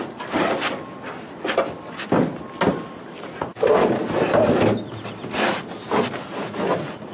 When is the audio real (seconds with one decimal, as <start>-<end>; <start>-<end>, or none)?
0.0-7.1